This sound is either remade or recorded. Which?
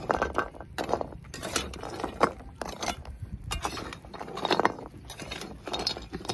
recorded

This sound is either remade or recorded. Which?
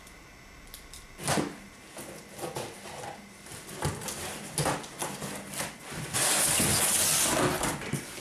recorded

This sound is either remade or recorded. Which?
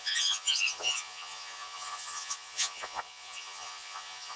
remade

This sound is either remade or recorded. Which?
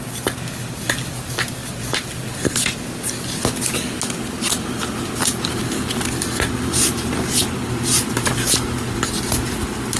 recorded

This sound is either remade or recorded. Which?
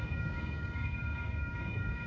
remade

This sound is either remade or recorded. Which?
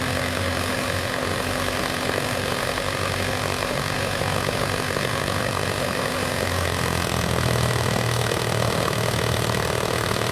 remade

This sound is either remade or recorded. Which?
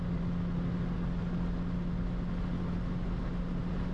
recorded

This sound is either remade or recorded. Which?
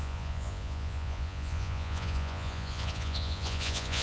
remade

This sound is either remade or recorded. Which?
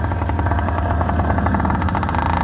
recorded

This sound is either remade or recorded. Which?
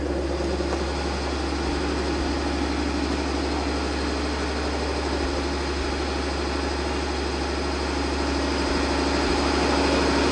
recorded